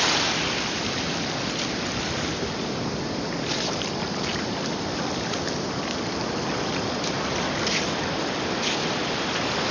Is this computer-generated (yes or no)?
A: no